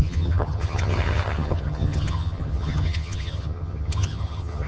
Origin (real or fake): fake